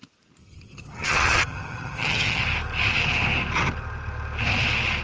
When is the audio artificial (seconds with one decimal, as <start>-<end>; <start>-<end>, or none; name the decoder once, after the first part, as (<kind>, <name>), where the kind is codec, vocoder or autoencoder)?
0.4-2.4 (vocoder, HiFi-GAN)